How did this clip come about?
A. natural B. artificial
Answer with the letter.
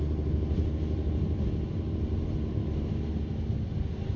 A